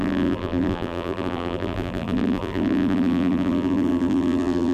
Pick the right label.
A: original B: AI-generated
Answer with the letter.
B